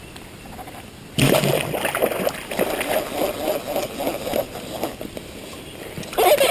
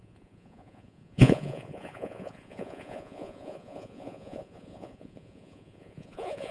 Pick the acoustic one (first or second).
first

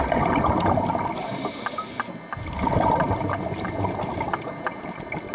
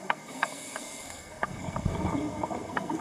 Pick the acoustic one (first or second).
first